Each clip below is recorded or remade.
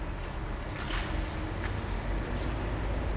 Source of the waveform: recorded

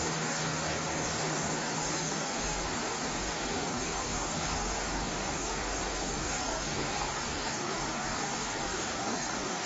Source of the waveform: remade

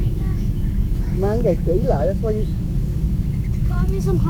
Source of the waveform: remade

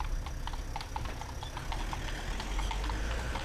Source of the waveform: recorded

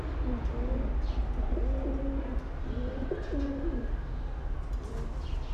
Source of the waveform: recorded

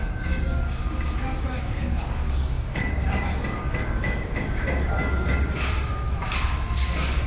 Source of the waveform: remade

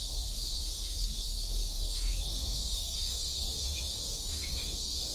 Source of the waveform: remade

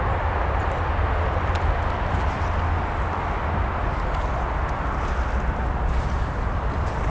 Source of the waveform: recorded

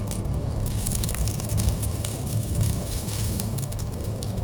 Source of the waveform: remade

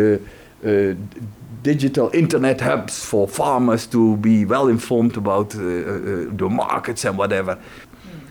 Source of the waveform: recorded